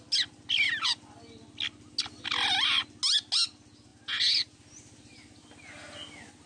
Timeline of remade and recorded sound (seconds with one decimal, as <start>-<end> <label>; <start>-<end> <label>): 0.0-6.5 recorded